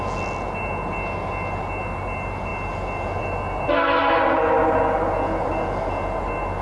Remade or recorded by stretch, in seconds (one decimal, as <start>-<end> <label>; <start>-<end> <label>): 0.0-6.6 recorded